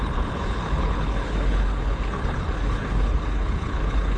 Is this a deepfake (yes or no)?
yes